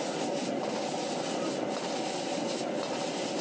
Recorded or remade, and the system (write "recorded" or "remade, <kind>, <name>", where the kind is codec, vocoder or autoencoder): recorded